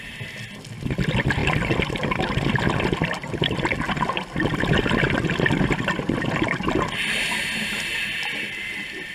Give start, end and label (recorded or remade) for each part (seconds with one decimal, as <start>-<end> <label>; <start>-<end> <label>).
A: 0.0-9.1 recorded